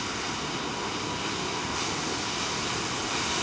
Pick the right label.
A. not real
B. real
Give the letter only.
A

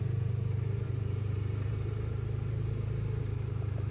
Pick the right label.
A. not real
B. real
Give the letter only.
A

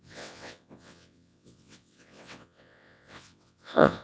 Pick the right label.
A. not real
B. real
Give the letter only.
A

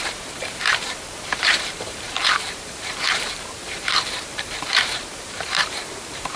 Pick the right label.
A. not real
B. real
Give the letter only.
A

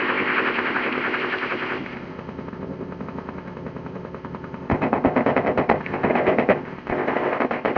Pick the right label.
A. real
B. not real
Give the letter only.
B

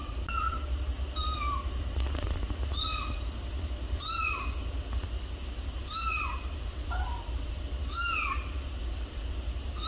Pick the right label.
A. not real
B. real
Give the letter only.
B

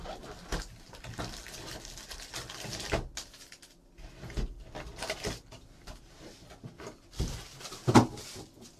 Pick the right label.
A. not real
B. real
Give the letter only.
B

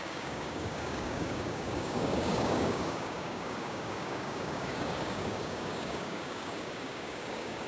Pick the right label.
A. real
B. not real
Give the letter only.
B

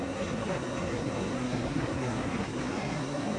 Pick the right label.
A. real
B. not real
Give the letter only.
B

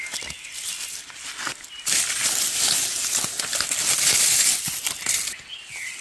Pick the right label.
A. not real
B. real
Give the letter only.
B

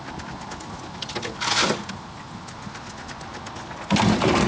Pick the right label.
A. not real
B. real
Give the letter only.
B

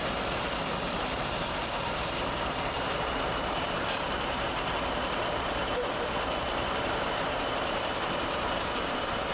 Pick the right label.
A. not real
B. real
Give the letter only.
A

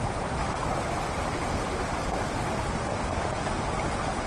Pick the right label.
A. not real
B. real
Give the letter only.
B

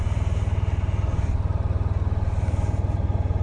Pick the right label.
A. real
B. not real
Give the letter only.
A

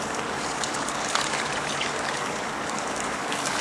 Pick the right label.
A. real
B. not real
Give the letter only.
B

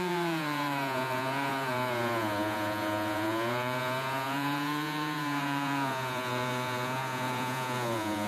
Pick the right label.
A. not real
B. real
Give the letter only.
A